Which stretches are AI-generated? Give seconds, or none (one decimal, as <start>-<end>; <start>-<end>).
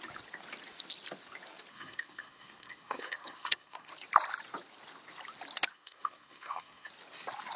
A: 1.7-3.9; 5.7-6.9